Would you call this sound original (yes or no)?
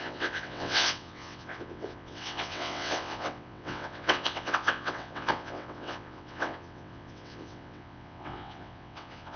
no